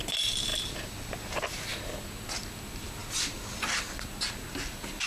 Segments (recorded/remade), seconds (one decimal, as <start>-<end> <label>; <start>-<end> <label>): 0.0-5.1 recorded